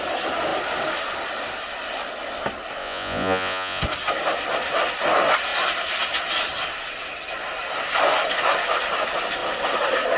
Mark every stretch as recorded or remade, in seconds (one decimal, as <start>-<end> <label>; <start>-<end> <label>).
0.0-2.8 recorded; 2.8-3.8 remade; 3.8-10.2 recorded